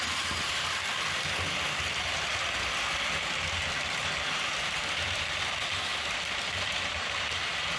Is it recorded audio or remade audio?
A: remade